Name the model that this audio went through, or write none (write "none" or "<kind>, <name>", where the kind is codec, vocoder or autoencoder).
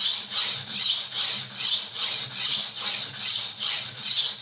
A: none